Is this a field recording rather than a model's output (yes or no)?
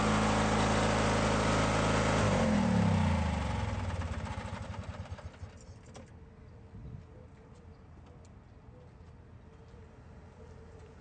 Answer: yes